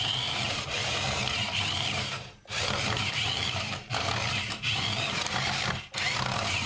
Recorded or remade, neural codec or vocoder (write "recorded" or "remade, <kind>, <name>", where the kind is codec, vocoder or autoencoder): remade, vocoder, BigVGAN v2